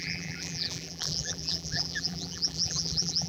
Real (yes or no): no